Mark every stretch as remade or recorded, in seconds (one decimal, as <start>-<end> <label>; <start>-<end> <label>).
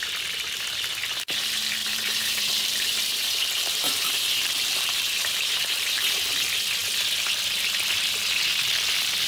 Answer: 0.0-1.8 recorded; 1.8-6.3 remade; 6.3-9.3 recorded